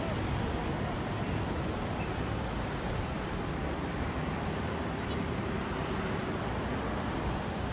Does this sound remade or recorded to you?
recorded